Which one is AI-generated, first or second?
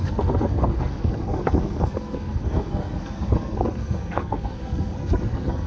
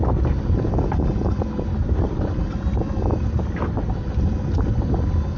first